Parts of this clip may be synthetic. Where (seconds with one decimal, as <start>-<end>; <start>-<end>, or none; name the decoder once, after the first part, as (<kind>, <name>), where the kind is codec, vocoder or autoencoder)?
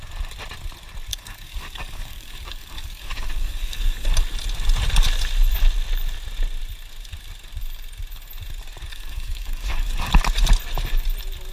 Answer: 1.1-4.1 (codec, DAC); 8.9-10.1